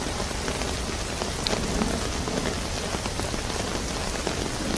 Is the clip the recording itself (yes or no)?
yes